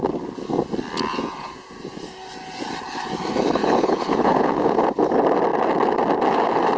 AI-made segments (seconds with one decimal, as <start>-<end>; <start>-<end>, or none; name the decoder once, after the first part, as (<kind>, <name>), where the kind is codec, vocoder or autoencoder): 1.1-2.0 (vocoder, Vocos); 3.6-4.9